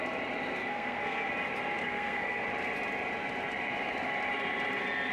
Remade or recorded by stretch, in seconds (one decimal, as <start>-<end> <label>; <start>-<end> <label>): 0.0-0.6 recorded; 0.6-1.3 remade; 1.3-1.8 recorded; 1.8-2.4 remade; 2.4-5.1 recorded